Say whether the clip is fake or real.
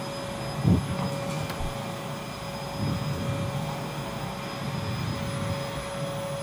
real